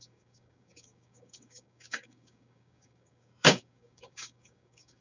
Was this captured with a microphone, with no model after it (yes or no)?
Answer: no